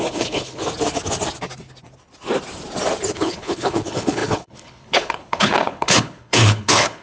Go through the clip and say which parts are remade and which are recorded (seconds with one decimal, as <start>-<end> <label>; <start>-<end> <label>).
0.0-0.6 remade; 0.6-3.1 recorded; 3.1-7.0 remade